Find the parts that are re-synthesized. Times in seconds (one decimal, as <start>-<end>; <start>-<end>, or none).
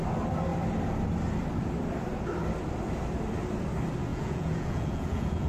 4.1-5.5